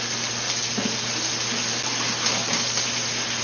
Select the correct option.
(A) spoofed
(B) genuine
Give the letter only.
B